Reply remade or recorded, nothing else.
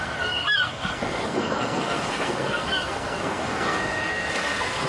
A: remade